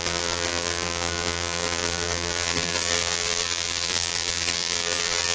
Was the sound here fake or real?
fake